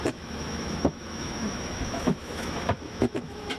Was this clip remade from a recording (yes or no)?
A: yes